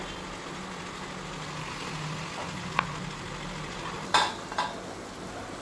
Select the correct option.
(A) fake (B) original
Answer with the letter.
B